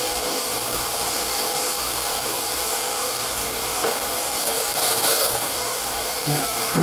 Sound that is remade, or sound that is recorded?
remade